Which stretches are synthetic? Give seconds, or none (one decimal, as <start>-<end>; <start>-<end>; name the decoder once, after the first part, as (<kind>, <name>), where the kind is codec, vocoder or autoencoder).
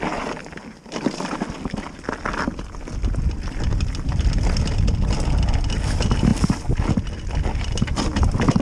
none